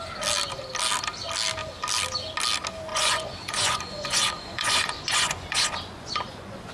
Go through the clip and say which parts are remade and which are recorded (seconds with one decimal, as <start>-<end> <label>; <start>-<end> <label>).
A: 0.0-2.9 recorded; 2.9-6.7 remade